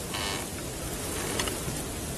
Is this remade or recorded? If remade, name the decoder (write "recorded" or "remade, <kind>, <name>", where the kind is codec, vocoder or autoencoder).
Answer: recorded